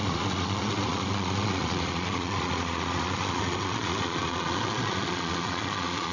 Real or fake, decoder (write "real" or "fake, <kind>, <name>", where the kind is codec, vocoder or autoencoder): fake, vocoder, Vocos